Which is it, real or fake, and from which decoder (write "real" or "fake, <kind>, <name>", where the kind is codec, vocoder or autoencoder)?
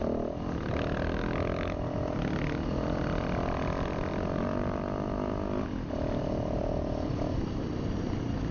real